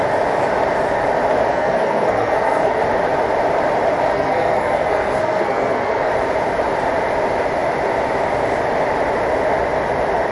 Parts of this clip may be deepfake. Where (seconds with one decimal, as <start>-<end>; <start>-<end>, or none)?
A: 1.5-2.8; 4.1-6.1

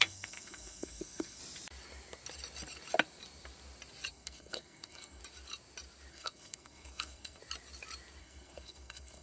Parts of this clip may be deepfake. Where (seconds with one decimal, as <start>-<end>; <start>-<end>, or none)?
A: 0.0-1.4; 4.1-5.2; 6.1-7.4; 8.2-9.2